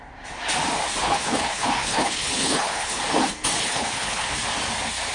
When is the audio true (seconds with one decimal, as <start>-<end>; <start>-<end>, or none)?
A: 0.0-1.0; 3.0-3.6; 4.3-5.1